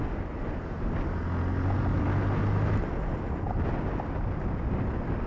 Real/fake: real